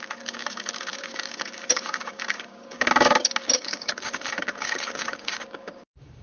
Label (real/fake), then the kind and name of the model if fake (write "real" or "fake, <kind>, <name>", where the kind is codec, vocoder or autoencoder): fake, codec, DAC